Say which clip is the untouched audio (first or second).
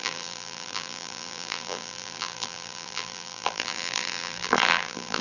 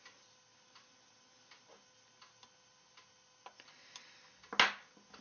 second